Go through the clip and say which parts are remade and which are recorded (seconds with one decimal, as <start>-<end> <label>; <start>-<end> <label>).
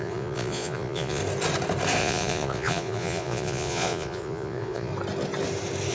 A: 0.0-1.2 remade; 1.2-2.0 recorded; 2.0-4.9 remade; 4.9-5.9 recorded